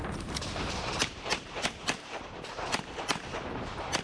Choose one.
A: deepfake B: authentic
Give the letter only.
A